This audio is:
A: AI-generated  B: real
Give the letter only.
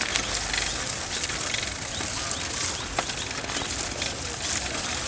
B